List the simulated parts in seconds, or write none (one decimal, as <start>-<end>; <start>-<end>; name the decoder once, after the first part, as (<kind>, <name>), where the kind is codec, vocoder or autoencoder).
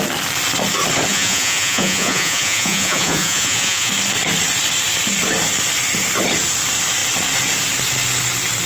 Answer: 1.1-3.9 (vocoder, Vocos)